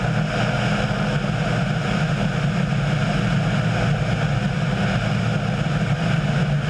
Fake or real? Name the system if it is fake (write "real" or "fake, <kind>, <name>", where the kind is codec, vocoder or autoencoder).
real